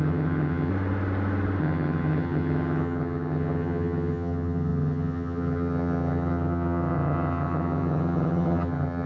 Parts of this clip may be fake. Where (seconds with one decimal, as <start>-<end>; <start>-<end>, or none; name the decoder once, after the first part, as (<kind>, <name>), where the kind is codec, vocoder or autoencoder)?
0.0-0.7 (vocoder, HiFi-GAN); 1.6-9.1